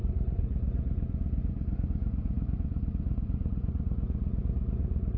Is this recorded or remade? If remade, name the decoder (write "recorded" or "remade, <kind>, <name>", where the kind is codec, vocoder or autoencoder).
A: remade, vocoder, Vocos